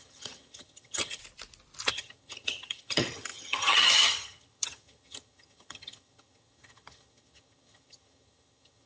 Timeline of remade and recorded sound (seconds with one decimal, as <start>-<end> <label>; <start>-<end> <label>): 0.0-1.2 remade; 1.2-1.9 recorded; 1.9-8.9 remade